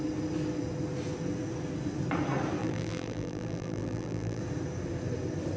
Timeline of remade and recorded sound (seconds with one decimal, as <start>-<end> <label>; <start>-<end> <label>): 0.0-2.6 recorded; 2.6-4.4 remade; 4.4-5.6 recorded